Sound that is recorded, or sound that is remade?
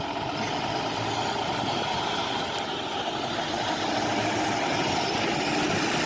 recorded